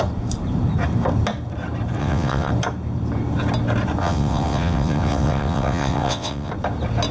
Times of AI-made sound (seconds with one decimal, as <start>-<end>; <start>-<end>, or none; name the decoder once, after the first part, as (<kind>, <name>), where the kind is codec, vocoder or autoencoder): 2.0-2.5 (vocoder, WaveNeXt); 4.0-6.5